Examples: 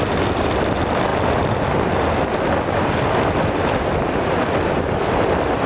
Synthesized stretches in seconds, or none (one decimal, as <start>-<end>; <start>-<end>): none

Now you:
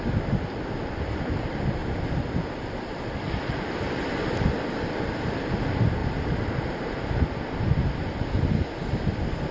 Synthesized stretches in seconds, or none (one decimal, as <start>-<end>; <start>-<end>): 1.8-2.5; 6.0-7.1

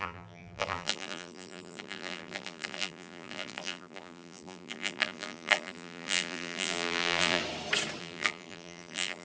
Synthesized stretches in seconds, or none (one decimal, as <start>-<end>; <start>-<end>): 0.0-7.4; 8.0-9.2

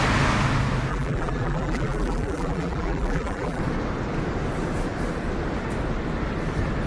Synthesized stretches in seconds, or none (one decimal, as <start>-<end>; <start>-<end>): 0.9-3.6

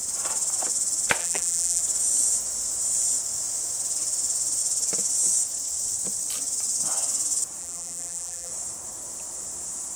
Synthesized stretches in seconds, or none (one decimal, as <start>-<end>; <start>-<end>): 1.2-1.8; 7.6-8.5

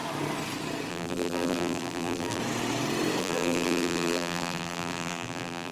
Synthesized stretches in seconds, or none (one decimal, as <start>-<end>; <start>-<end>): 0.9-2.4; 3.2-5.7

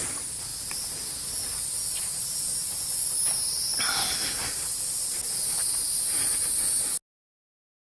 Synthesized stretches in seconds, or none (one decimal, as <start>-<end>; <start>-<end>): 0.5-5.2

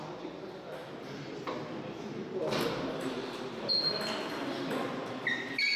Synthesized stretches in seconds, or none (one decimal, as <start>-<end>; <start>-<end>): 0.8-3.8